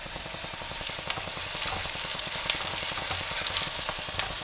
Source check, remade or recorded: recorded